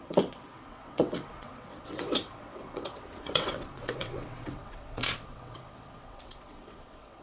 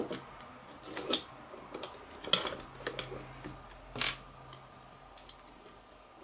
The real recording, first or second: second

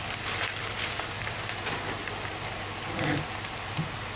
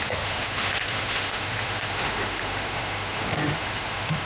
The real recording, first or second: first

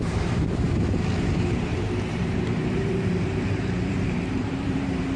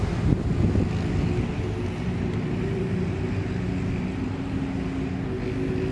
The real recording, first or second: second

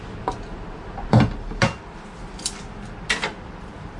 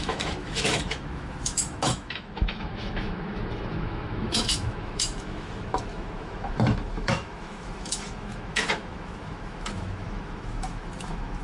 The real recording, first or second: first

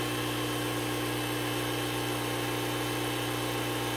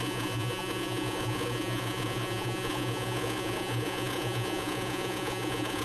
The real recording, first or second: first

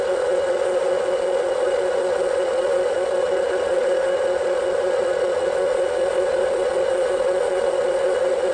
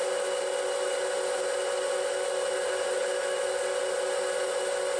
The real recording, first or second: second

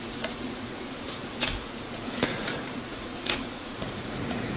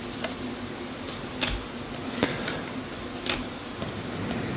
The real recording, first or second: second